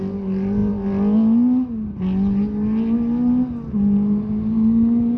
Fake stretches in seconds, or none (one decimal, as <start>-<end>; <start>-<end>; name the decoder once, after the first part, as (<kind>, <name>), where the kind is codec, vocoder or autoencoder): none

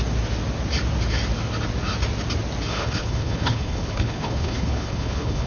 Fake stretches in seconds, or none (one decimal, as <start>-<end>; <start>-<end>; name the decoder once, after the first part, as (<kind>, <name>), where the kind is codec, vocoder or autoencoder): 2.7-5.5 (codec, HILCodec)

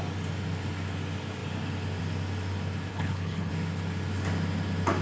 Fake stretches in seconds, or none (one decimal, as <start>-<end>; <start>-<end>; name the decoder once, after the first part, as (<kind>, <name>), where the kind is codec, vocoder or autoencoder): 2.9-3.5 (codec, HILCodec)

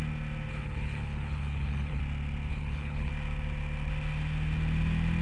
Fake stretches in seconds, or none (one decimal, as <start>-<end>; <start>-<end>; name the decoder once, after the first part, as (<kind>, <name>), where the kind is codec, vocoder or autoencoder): 0.5-2.0 (codec, HILCodec); 2.5-3.1

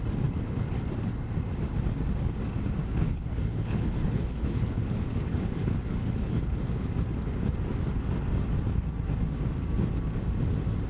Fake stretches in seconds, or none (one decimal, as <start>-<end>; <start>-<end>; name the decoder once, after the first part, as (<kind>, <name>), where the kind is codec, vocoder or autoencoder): 2.8-6.4 (codec, HILCodec)

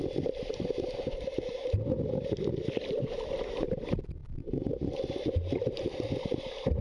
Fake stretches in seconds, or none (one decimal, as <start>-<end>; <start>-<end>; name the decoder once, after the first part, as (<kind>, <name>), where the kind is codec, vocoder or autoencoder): none

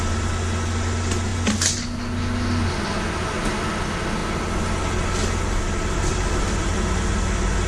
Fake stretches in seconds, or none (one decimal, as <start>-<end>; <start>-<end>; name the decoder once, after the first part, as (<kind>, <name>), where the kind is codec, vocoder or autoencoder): none